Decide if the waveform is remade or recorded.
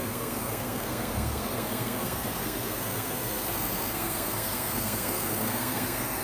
remade